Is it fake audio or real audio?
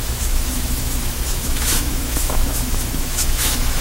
fake